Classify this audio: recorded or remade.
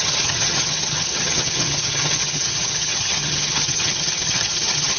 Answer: remade